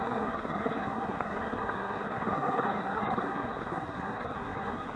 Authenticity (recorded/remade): remade